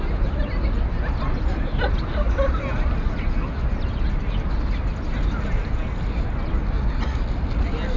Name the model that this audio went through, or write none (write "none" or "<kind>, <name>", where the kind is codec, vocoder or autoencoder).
none